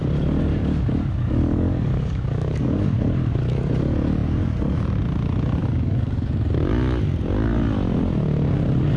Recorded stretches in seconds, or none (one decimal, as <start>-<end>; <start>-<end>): 0.0-0.5; 3.7-5.6; 6.3-9.0